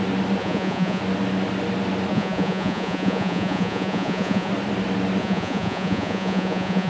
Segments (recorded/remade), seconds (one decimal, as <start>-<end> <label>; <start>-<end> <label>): 0.0-0.4 recorded; 0.4-1.0 remade; 1.0-2.1 recorded; 2.1-4.5 remade; 4.5-5.2 recorded; 5.2-6.9 remade